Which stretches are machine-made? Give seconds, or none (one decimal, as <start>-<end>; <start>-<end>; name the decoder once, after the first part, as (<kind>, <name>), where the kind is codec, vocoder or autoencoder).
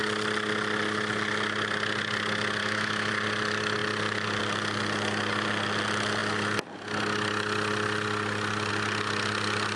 2.6-3.1 (autoencoder, DAC-VAE)